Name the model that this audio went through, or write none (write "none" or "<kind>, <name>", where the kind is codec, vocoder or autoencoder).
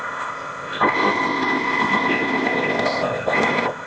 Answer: codec, ZipCodec